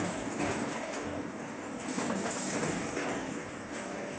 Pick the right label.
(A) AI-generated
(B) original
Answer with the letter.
A